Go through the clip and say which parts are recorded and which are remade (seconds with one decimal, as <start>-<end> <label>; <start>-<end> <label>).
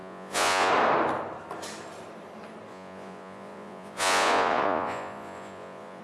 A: 0.0-0.7 remade; 0.7-2.7 recorded; 2.7-6.0 remade